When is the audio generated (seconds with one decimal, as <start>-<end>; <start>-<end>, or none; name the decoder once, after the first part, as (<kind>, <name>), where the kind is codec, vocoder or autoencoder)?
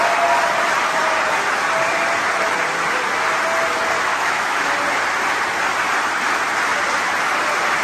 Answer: 4.1-4.7 (autoencoder, DAC-VAE)